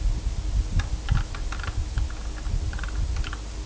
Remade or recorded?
recorded